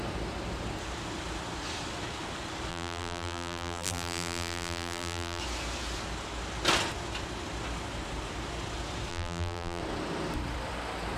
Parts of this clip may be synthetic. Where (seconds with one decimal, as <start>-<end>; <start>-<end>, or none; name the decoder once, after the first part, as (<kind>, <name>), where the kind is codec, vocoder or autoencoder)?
2.7-5.4 (vocoder, BigVGAN v2); 9.1-9.8